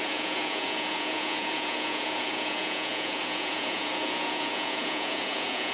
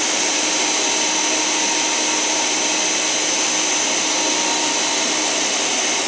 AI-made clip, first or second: first